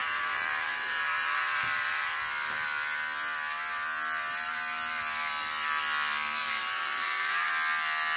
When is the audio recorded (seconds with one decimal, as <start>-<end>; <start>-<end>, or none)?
2.2-6.4; 7.5-8.2